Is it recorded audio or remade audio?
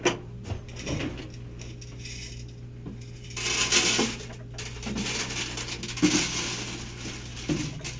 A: recorded